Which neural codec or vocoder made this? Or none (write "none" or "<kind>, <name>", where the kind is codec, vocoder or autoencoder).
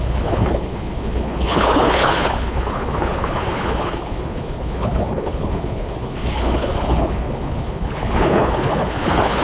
codec, HILCodec